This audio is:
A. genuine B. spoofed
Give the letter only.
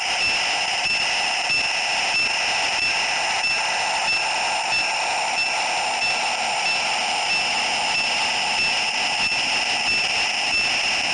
A